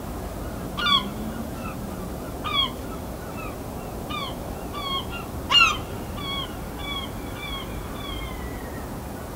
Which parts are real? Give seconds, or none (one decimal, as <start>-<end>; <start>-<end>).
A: 0.0-9.4